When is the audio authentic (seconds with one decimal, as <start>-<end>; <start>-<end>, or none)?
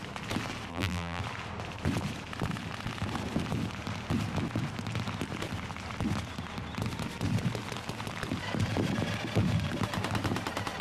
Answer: 0.0-0.7; 1.2-10.8